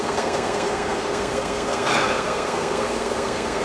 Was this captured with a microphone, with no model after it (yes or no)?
no